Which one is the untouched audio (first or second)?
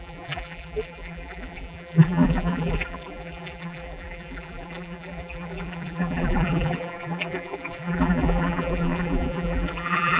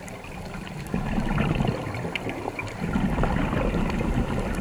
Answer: second